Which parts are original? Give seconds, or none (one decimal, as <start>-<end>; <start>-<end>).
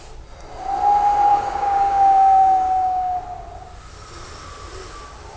0.0-1.3; 3.1-5.4